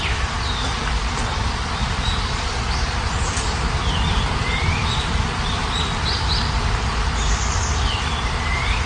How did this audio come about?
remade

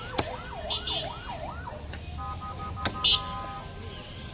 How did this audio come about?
recorded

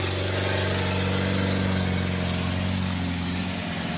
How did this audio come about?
recorded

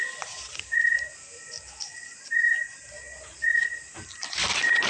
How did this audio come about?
remade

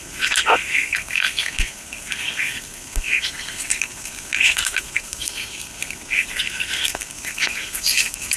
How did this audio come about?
remade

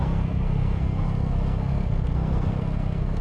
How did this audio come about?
remade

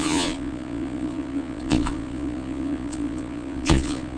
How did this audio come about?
remade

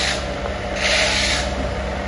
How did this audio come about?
recorded